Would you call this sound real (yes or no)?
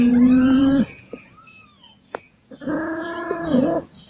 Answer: no